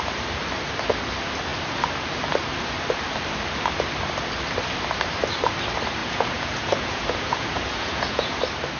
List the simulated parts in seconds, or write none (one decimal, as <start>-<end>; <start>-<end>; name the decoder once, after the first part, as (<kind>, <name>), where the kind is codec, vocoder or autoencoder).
6.0-8.4 (vocoder, Vocos)